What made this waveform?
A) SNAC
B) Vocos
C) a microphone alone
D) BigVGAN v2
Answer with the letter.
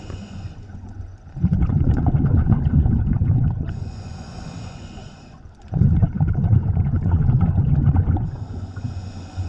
B